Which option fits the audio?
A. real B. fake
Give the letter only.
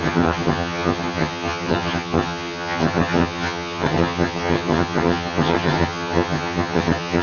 B